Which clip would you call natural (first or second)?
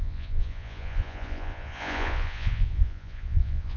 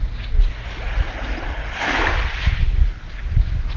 second